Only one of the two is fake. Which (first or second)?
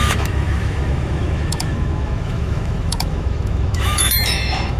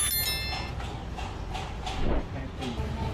first